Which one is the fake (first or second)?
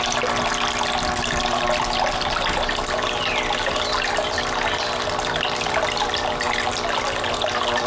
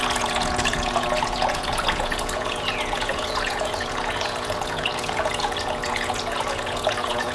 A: second